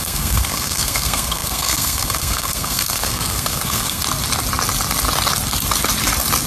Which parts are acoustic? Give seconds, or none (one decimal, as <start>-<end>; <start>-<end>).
4.0-6.5